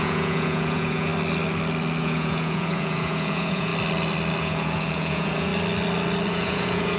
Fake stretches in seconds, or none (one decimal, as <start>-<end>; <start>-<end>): 0.0-1.1; 2.0-3.7; 4.4-5.5; 6.3-7.0